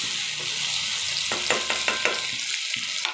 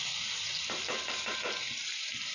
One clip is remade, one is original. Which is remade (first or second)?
second